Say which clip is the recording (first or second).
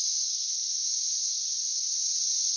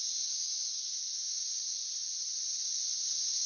second